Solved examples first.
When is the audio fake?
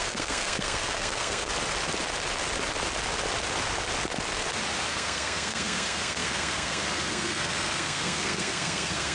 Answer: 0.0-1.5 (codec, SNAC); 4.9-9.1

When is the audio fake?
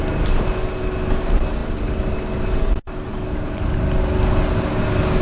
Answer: none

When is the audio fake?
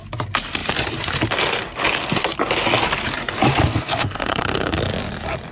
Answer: 3.6-4.8 (codec, SNAC)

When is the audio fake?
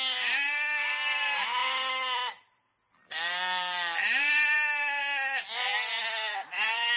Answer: none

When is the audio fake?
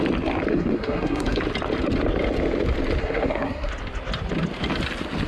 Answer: 0.5-1.4 (codec, SNAC); 3.0-3.7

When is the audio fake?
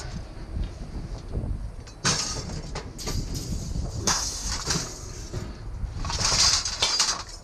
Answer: 4.0-4.5 (codec, SNAC)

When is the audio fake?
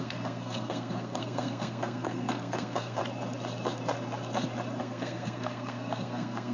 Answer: 0.0-3.0 (codec, SNAC); 4.8-6.5